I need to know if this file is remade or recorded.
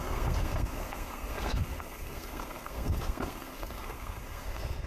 remade